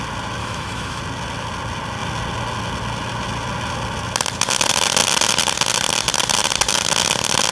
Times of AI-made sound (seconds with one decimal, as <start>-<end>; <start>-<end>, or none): 0.4-1.0